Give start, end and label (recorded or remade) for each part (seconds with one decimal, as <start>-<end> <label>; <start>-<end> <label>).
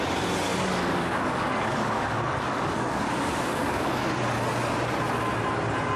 0.0-0.5 recorded; 0.5-4.0 remade; 4.0-6.0 recorded